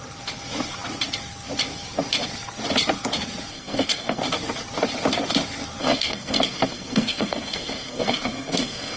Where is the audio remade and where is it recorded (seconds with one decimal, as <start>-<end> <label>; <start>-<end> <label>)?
0.0-3.5 recorded; 3.5-4.2 remade; 4.2-5.8 recorded; 5.8-9.0 remade